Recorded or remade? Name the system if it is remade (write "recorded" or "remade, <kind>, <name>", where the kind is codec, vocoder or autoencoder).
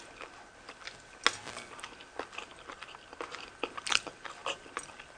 recorded